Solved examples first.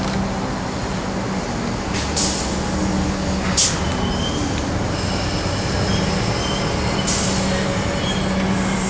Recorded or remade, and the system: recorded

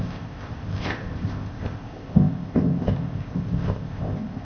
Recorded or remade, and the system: remade, codec, ZipCodec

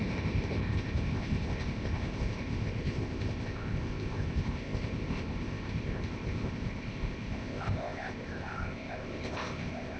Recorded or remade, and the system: remade, codec, ZipCodec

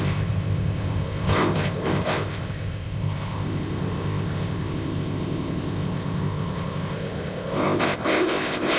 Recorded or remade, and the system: remade, codec, ZipCodec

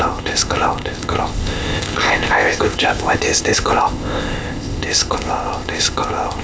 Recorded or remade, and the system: remade, codec, ZipCodec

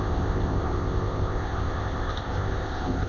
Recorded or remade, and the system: remade, codec, ZipCodec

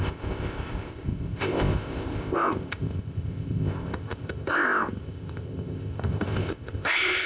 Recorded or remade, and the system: remade, codec, ZipCodec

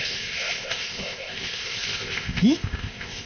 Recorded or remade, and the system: remade, codec, ZipCodec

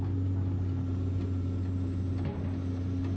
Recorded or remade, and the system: recorded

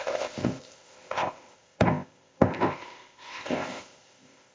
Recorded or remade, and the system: remade, codec, ZipCodec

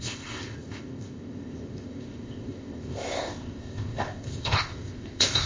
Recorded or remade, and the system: remade, codec, ZipCodec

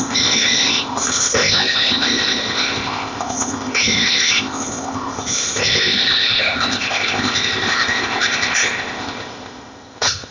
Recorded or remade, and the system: remade, codec, ZipCodec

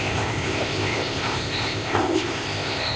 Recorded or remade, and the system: remade, codec, ZipCodec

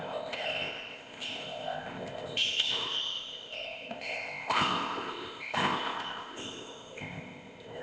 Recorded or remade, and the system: remade, codec, ZipCodec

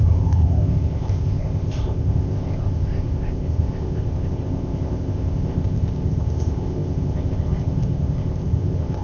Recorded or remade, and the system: remade, codec, ZipCodec